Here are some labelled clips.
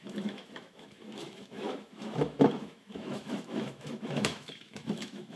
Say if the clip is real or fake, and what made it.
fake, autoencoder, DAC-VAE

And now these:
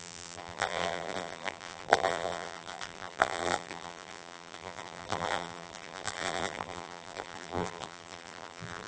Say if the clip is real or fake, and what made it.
fake, vocoder, BigVGAN v2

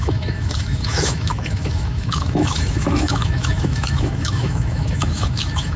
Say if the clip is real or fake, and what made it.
fake, autoencoder, DAC-VAE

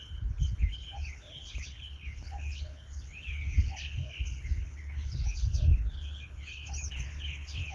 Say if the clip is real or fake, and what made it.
fake, codec, HILCodec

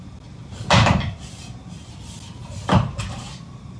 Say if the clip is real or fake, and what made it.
real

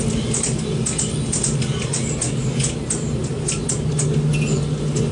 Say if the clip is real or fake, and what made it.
real